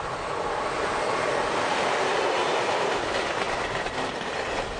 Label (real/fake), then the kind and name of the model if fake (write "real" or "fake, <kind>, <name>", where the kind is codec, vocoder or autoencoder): real